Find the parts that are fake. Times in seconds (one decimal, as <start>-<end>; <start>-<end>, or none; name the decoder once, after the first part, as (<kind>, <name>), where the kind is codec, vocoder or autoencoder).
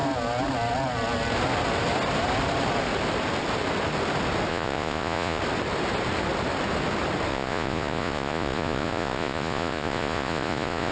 4.5-5.4 (vocoder, Vocos); 7.3-10.9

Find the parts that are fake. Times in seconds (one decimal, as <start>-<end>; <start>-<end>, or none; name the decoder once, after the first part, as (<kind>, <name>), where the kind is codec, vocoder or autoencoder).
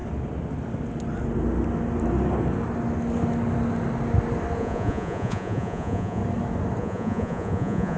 4.6-6.2 (vocoder, Vocos); 6.8-8.0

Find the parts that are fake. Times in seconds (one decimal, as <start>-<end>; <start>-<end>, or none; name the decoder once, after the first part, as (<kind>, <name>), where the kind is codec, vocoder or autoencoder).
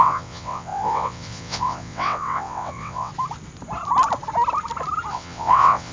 0.0-3.1 (vocoder, WaveNeXt); 5.1-5.9